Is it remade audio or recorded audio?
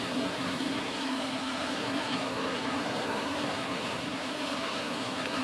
remade